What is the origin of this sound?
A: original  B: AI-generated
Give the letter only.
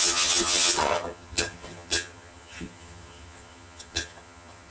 B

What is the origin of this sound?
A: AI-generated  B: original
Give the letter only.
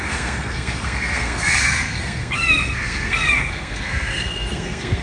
A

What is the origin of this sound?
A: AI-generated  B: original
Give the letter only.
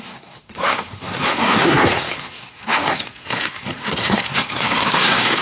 A